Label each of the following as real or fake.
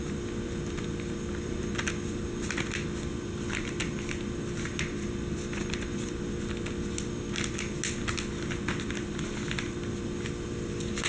real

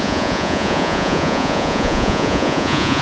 fake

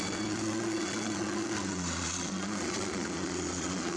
fake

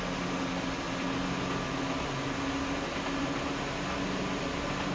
real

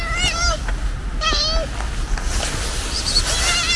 real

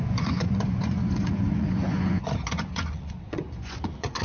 fake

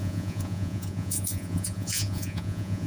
fake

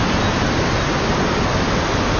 real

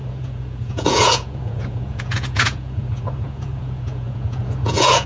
fake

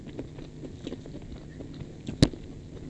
real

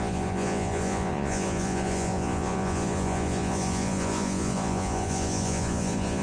fake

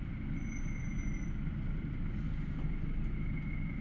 real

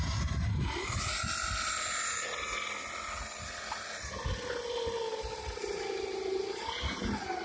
real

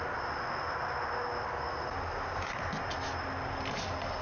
real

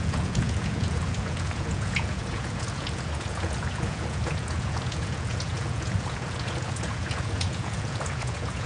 fake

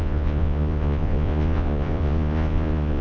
fake